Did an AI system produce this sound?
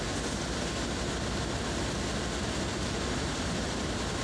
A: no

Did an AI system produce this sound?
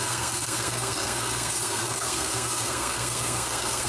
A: yes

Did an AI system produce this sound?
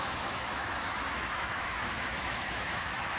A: yes